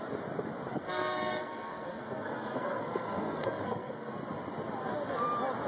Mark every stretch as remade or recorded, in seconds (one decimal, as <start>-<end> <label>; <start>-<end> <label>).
0.0-0.7 recorded; 0.7-4.1 remade; 4.1-5.7 recorded